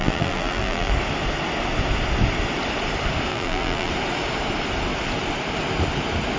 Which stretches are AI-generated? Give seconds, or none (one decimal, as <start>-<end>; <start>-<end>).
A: 0.0-0.9; 3.3-3.9